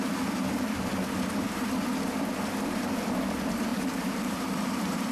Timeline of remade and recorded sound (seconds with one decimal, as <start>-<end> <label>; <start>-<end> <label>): 0.0-3.7 recorded; 3.7-5.1 remade